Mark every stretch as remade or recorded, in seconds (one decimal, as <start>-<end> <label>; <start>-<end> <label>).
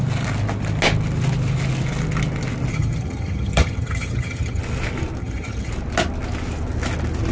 0.0-2.7 recorded; 2.7-4.6 remade; 4.6-5.2 recorded; 5.2-5.7 remade; 5.7-7.3 recorded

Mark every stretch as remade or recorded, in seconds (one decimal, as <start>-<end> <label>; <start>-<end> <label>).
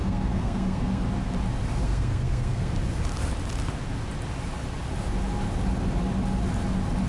0.0-1.0 remade; 1.0-1.8 recorded; 1.8-2.7 remade; 2.7-7.1 recorded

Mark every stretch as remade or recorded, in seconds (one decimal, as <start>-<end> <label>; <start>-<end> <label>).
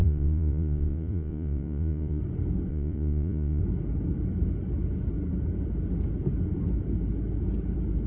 0.0-2.2 remade; 2.2-2.7 recorded; 2.7-3.6 remade; 3.6-8.1 recorded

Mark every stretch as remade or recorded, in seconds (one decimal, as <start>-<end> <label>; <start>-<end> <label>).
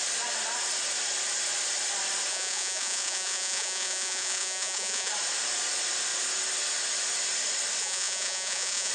0.0-2.3 recorded; 2.3-5.1 remade; 5.1-7.8 recorded; 7.8-8.9 remade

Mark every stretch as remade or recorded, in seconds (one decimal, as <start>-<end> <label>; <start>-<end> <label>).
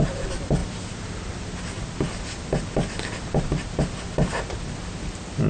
0.0-5.5 recorded